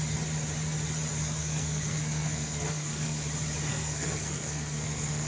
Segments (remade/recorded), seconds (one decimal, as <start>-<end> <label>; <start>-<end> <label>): 0.0-1.4 recorded; 1.4-3.2 remade; 3.2-3.7 recorded; 3.7-5.3 remade